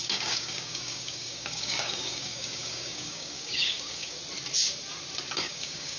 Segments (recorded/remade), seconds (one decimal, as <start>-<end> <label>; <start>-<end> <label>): 0.0-4.2 remade; 4.2-5.4 recorded; 5.4-6.0 remade